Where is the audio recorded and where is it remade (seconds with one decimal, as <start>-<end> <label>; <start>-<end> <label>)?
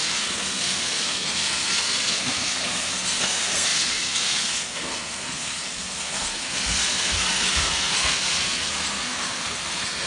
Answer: 0.0-10.1 remade